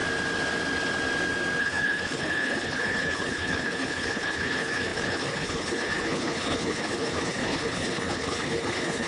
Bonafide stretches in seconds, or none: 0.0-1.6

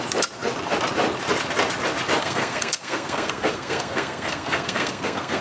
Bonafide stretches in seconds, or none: 0.0-2.2